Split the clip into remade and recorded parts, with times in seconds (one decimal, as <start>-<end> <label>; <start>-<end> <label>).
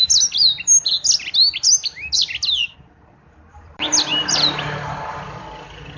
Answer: 0.0-6.0 recorded